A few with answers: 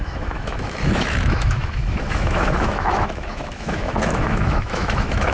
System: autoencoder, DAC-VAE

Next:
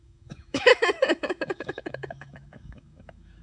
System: autoencoder, DAC-VAE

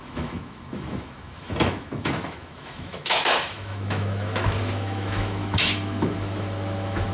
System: autoencoder, DAC-VAE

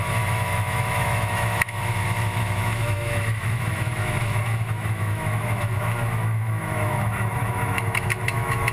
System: autoencoder, DAC-VAE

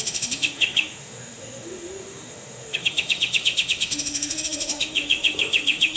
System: autoencoder, DAC-VAE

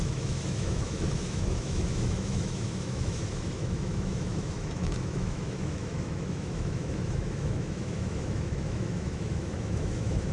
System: autoencoder, DAC-VAE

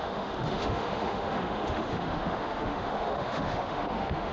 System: autoencoder, DAC-VAE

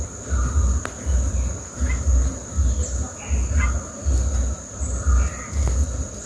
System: none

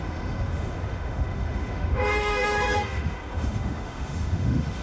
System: autoencoder, DAC-VAE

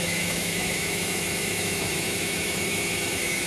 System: autoencoder, DAC-VAE